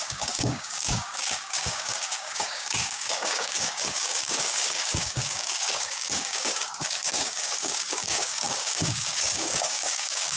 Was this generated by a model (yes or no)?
yes